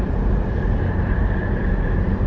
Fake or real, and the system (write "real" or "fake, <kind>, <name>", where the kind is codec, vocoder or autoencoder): fake, vocoder, BigVGAN v2